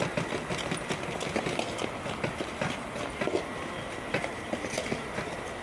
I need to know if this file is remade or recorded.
recorded